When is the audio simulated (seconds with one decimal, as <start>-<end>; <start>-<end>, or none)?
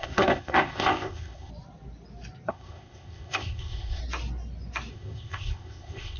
0.0-1.5; 2.5-4.0; 4.9-6.2